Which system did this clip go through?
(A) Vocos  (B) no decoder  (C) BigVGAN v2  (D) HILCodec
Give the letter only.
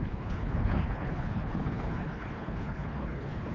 D